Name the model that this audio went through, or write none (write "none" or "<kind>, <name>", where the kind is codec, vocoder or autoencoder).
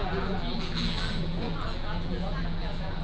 vocoder, BigVGAN v2